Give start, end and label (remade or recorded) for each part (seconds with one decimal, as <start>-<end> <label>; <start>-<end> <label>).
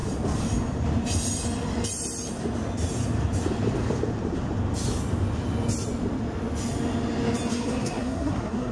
0.0-7.5 recorded; 7.5-8.7 remade